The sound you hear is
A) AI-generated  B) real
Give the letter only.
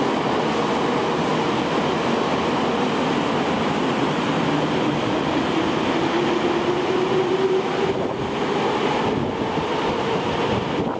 B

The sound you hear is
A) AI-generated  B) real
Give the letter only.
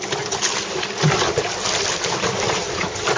B